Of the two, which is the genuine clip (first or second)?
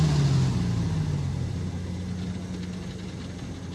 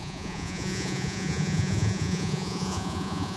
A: first